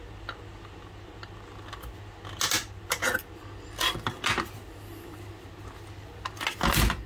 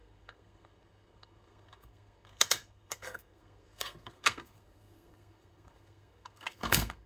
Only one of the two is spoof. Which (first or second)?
second